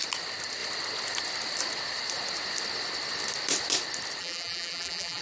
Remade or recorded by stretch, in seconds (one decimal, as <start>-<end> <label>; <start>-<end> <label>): 0.0-4.2 recorded; 4.2-5.2 remade